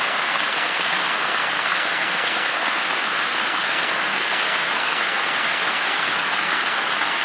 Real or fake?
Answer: fake